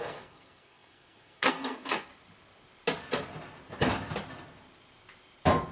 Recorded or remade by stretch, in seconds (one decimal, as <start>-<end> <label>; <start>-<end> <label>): 0.0-2.1 remade; 2.1-5.7 recorded